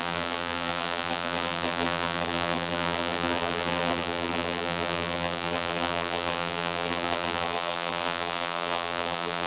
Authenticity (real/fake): fake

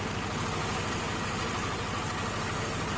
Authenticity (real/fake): real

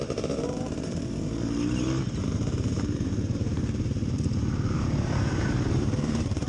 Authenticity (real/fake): fake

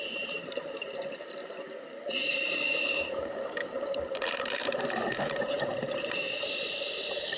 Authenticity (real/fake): fake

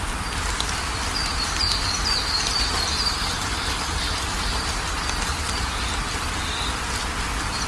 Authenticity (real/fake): fake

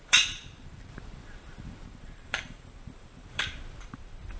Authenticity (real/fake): fake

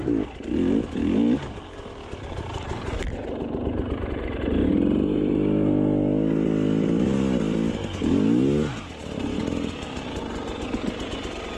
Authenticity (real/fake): real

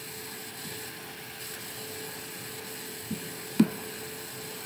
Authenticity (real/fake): real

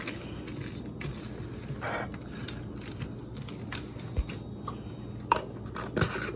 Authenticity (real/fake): real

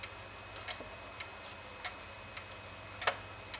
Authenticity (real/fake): real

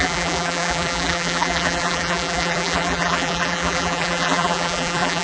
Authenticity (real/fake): fake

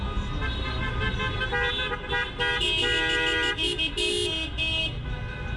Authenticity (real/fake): real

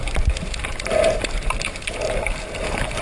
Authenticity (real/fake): fake